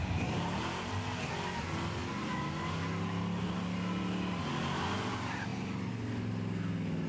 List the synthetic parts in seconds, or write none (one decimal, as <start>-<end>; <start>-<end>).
0.0-1.3